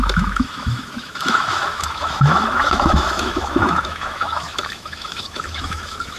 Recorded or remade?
remade